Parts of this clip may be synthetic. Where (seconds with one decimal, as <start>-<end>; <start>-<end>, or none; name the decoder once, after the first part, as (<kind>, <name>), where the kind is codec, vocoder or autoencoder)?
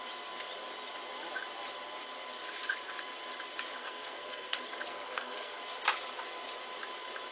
3.8-5.6 (codec, SNAC)